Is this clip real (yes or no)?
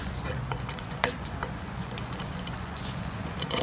no